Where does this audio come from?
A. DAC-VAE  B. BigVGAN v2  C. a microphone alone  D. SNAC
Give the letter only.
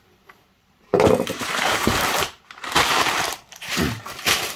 B